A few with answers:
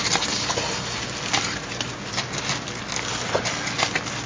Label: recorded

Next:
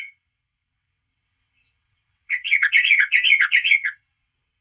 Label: remade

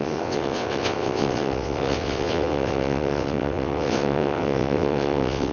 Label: remade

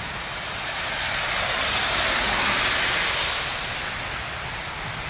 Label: recorded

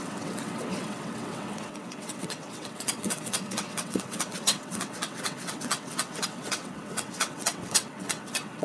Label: remade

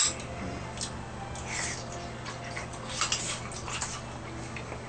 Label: recorded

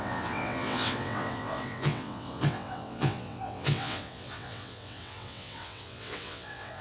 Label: remade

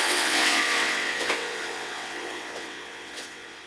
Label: remade